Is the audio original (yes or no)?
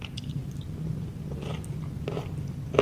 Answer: yes